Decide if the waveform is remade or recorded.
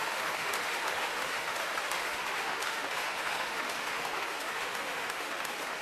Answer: remade